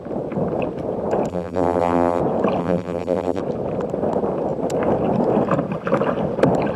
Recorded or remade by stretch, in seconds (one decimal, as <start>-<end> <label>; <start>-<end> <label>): 0.0-1.3 recorded; 1.3-2.2 remade; 2.2-2.6 recorded; 2.6-3.4 remade; 3.4-6.8 recorded